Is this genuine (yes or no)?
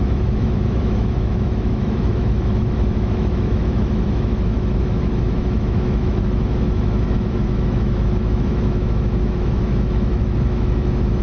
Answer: no